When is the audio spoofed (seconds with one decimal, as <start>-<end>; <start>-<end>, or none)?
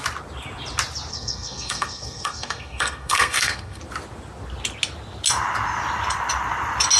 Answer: 1.1-3.8